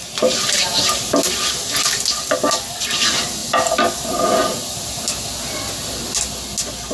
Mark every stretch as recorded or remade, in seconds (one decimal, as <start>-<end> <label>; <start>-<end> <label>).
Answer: 0.0-6.9 recorded